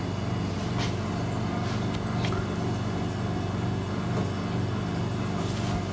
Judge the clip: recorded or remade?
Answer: recorded